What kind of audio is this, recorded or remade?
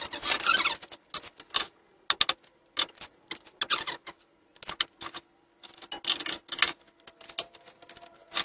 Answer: recorded